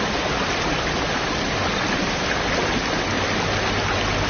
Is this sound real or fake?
real